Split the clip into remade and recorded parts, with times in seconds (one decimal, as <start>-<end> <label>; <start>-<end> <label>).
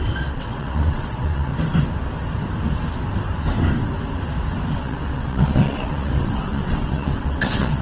0.0-1.5 remade; 1.5-4.7 recorded; 4.7-7.8 remade